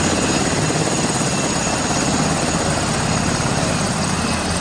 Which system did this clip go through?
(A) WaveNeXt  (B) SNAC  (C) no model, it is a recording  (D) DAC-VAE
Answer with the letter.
C